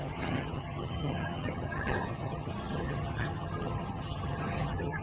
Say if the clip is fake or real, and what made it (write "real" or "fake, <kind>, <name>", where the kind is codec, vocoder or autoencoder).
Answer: fake, vocoder, HiFi-GAN